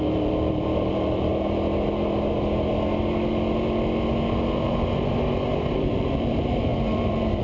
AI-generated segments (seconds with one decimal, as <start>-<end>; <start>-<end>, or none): 0.0-1.3; 5.7-7.4